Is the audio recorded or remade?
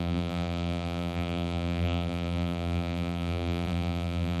remade